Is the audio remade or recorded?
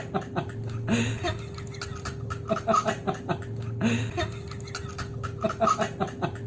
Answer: recorded